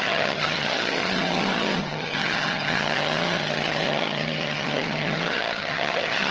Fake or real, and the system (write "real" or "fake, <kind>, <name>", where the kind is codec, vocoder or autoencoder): fake, vocoder, HiFi-GAN